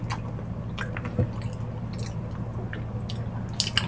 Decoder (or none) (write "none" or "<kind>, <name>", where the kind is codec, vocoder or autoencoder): none